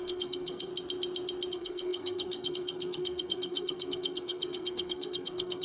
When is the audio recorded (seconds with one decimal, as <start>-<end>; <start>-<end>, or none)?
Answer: 0.7-1.5